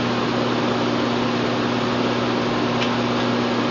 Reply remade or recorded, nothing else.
recorded